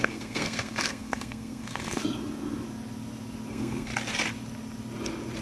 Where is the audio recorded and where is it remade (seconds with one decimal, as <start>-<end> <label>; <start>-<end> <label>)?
0.0-2.0 remade; 2.0-3.5 recorded; 3.5-3.9 remade; 3.9-5.4 recorded